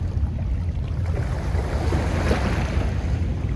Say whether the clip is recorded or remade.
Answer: recorded